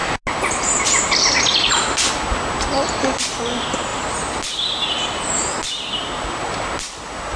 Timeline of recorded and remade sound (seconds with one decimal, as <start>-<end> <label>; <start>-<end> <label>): 0.0-7.4 recorded